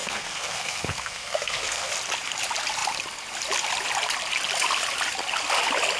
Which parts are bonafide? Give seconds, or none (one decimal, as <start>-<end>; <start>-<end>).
1.9-6.0